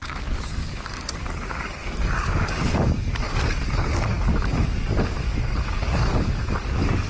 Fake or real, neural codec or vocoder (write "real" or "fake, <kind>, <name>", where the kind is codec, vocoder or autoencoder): fake, codec, DAC